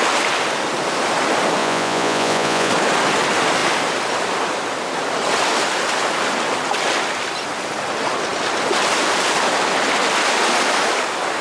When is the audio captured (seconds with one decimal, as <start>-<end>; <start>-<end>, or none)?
0.0-1.6; 2.7-11.4